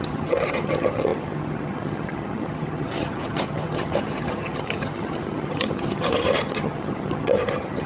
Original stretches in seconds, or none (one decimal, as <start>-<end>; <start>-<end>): none